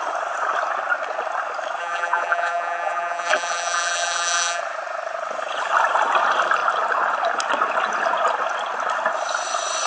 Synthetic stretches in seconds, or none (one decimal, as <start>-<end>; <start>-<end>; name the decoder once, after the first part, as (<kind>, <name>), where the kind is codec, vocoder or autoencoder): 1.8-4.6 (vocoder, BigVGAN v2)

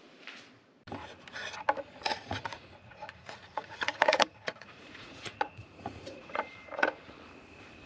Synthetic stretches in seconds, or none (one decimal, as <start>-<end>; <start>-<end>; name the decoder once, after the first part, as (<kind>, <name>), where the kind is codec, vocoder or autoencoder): 2.1-6.8 (vocoder, Vocos)

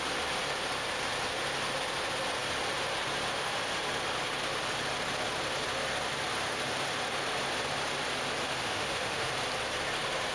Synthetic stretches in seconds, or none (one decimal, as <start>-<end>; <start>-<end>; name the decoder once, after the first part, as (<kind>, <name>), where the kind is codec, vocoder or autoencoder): 8.6-9.3 (autoencoder, DAC-VAE)

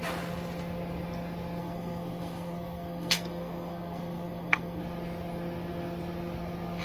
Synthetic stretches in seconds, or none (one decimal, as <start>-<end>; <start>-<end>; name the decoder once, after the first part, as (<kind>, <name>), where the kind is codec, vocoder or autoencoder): 1.6-4.8 (codec, SNAC)

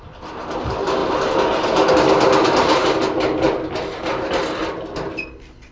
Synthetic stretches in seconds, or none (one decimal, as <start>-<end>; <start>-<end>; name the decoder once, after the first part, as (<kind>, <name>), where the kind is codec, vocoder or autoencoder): none

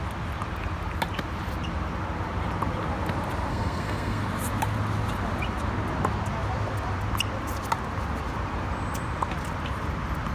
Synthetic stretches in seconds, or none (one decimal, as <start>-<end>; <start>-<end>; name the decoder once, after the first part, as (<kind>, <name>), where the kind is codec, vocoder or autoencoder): 3.5-4.2 (codec, SNAC)

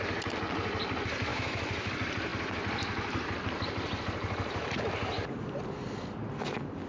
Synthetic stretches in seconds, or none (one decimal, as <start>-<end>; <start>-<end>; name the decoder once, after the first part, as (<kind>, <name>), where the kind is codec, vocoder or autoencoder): 1.3-1.9 (autoencoder, DAC-VAE)

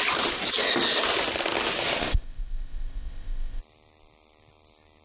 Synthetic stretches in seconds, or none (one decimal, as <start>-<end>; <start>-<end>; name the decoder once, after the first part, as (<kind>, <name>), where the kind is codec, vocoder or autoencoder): 2.0-3.6 (codec, ZipCodec)